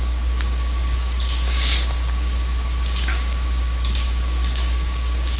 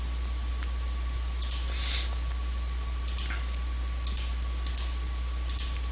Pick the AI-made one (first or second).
first